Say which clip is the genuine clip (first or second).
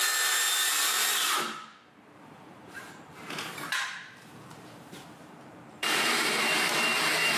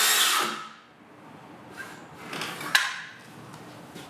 second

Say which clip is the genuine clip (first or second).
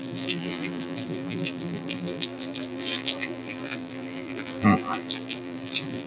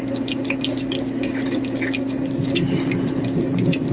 second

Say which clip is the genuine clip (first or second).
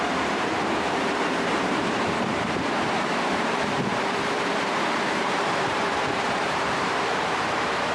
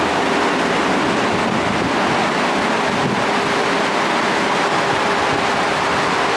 second